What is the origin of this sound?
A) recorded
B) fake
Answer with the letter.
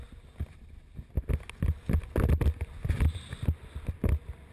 A